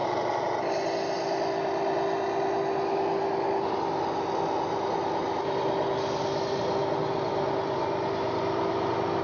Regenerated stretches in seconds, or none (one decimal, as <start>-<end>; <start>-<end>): none